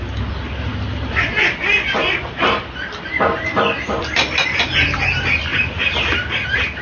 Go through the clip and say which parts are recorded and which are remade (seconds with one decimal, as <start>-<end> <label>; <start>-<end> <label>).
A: 0.0-0.7 recorded; 0.7-4.6 remade; 4.6-5.5 recorded; 5.5-6.0 remade; 6.0-6.8 recorded